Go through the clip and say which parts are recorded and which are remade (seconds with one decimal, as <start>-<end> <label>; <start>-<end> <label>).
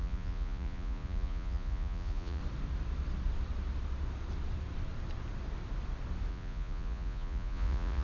0.0-2.4 remade; 2.4-6.3 recorded; 6.3-8.0 remade